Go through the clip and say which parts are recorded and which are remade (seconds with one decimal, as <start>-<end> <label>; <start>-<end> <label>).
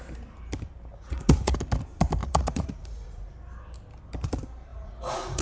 0.0-0.9 recorded; 0.9-1.6 remade; 1.6-2.2 recorded; 2.2-3.3 remade; 3.3-4.7 recorded; 4.7-5.4 remade